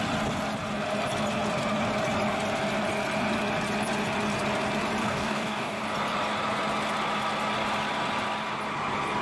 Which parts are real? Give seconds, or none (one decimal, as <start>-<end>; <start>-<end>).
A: 0.0-5.0; 5.8-9.2